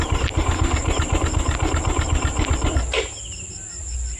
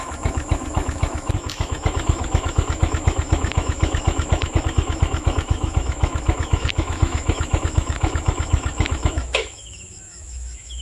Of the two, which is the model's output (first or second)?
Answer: second